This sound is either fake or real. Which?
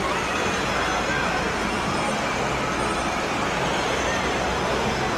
real